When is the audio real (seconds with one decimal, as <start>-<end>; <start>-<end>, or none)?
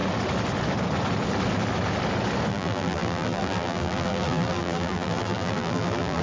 0.0-2.5